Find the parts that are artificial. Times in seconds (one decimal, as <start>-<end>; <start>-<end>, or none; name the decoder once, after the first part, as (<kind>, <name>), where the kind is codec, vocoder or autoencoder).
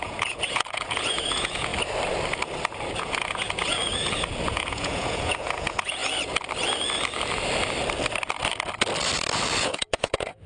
0.0-1.7 (vocoder, Vocos); 3.0-3.8; 4.5-6.0; 9.6-10.5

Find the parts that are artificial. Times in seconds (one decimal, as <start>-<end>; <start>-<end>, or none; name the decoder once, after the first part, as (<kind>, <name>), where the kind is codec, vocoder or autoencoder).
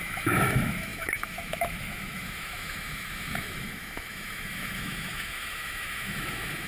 0.0-6.7 (autoencoder, DAC-VAE)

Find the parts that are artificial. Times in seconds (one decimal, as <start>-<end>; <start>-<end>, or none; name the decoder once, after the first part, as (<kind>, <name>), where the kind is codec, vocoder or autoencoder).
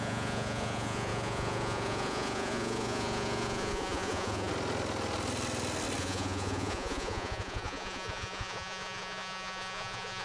0.0-4.5 (vocoder, Vocos); 6.0-10.2